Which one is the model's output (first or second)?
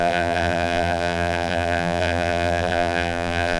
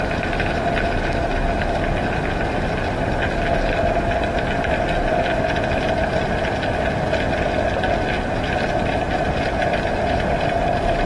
first